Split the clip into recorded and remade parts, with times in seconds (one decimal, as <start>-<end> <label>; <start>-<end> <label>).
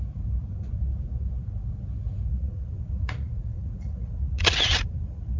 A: 0.0-2.3 recorded; 2.3-5.4 remade